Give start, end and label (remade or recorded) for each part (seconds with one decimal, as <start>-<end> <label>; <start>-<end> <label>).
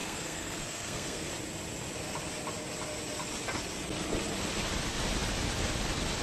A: 0.0-1.3 remade; 1.3-6.2 recorded